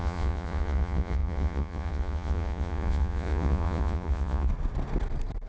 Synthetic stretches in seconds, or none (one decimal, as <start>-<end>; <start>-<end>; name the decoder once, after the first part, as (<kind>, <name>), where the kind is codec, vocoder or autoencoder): 0.0-4.5 (vocoder, Vocos)